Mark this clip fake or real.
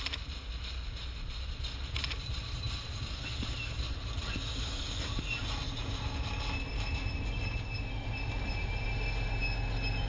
real